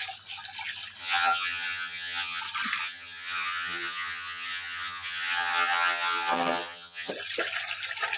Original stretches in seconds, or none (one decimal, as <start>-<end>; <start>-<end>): 0.0-1.0; 2.4-2.8; 7.1-8.2